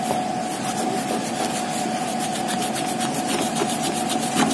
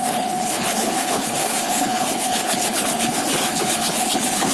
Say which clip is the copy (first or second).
second